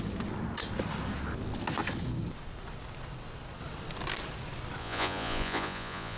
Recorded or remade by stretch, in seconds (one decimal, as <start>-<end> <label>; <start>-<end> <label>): 0.0-4.8 recorded; 4.8-6.2 remade